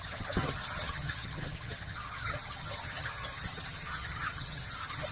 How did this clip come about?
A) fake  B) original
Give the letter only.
A